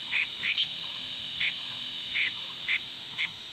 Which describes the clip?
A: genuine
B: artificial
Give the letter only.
B